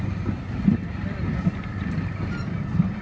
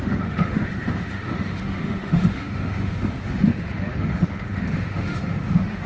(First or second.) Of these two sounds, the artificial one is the second